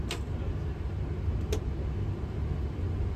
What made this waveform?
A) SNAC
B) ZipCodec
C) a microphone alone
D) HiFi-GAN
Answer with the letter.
C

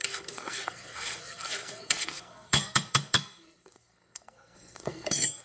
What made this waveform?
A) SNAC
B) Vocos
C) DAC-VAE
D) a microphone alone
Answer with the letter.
A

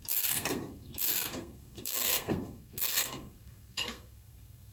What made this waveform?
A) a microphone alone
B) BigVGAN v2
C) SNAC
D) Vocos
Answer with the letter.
C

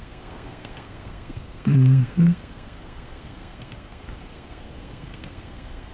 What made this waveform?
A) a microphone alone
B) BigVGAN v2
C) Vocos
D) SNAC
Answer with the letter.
D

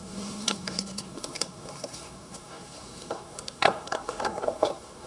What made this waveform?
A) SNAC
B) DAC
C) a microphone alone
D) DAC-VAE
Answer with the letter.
A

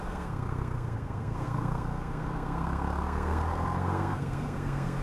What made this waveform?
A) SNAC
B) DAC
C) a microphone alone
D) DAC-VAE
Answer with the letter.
A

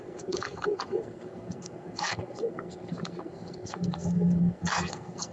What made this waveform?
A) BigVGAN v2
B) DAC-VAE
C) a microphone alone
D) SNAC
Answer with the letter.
D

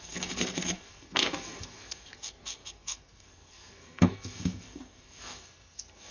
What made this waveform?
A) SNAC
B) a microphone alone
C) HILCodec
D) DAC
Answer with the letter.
A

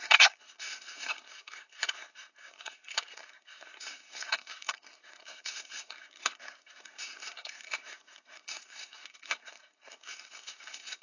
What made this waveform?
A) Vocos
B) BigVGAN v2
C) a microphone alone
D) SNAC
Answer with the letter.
D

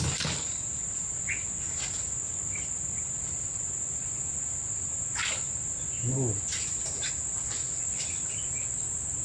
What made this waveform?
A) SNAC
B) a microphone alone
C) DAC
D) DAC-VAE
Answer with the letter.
B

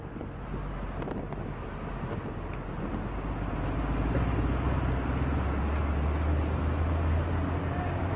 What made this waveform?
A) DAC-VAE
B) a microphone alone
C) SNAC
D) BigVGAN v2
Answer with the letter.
B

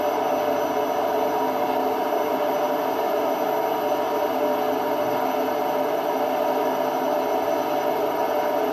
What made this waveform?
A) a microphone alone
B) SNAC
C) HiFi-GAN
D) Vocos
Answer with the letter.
A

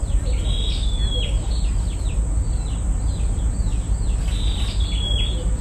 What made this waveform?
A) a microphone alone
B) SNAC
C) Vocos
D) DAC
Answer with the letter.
A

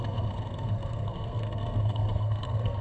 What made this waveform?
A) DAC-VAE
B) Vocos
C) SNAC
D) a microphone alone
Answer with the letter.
C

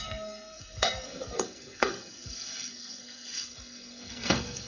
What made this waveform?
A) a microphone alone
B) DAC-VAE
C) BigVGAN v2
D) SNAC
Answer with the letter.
D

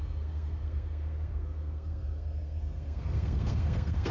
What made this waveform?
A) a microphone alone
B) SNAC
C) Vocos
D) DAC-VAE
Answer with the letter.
B